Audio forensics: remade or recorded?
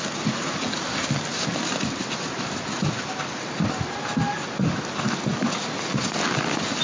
recorded